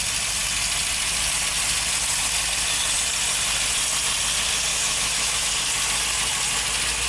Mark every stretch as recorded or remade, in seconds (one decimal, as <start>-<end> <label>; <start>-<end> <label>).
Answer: 0.0-4.7 recorded; 4.7-5.5 remade; 5.5-7.1 recorded